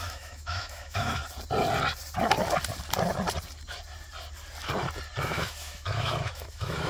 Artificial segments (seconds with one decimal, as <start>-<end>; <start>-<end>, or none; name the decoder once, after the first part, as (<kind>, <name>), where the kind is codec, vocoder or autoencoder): 0.0-1.2 (autoencoder, DAC-VAE); 5.2-6.9